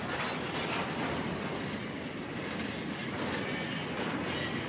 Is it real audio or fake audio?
real